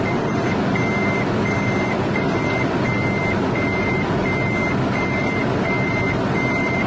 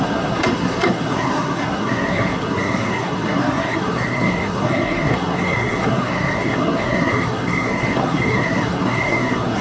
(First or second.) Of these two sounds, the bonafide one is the first